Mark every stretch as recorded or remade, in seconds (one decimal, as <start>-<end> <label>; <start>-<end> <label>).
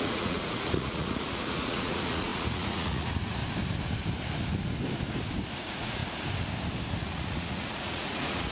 0.0-3.4 remade; 3.4-5.5 recorded; 5.5-6.0 remade; 6.0-7.0 recorded; 7.0-8.5 remade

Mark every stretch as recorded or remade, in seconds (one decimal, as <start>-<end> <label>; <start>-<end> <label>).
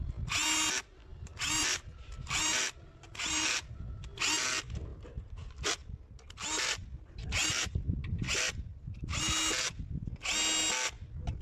0.0-1.1 recorded; 1.1-3.7 remade; 3.7-4.9 recorded; 4.9-9.2 remade; 9.2-11.4 recorded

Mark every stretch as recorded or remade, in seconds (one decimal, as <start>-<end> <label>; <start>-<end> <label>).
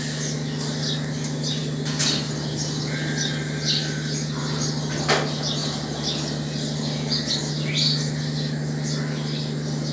0.0-9.9 recorded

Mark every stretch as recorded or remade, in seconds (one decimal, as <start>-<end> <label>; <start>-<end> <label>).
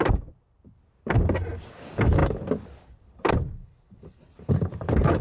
0.0-5.2 recorded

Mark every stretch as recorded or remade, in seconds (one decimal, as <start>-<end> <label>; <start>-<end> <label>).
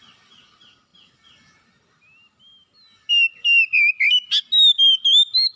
0.0-5.6 recorded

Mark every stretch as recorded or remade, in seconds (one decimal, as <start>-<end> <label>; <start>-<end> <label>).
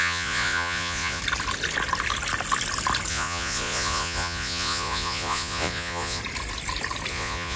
0.0-1.2 remade; 1.2-3.1 recorded; 3.1-6.2 remade; 6.2-7.1 recorded; 7.1-7.6 remade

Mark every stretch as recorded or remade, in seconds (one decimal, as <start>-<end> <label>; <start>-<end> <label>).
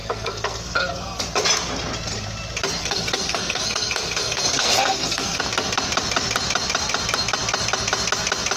0.0-1.2 remade; 1.2-2.8 recorded; 2.8-5.4 remade; 5.4-8.6 recorded